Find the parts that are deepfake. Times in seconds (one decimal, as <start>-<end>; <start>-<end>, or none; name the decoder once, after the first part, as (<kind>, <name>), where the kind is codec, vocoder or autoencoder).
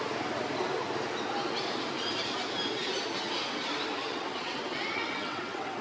4.1-5.8 (vocoder, WaveNeXt)